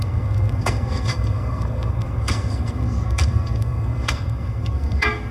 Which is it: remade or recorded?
remade